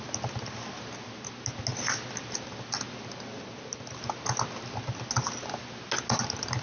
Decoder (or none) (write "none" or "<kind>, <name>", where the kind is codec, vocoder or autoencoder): none